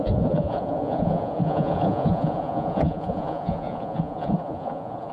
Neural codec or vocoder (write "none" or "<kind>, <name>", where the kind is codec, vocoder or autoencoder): vocoder, Vocos